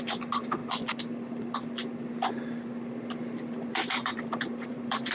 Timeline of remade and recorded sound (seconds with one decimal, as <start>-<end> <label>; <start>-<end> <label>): 0.0-0.6 remade; 0.6-3.7 recorded; 3.7-5.1 remade